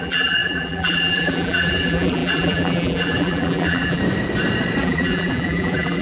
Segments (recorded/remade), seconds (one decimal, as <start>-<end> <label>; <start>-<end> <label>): 0.0-4.0 remade; 4.0-4.8 recorded; 4.8-6.0 remade